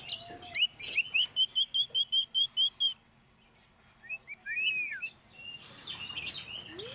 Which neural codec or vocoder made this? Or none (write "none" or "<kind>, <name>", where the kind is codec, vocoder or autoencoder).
none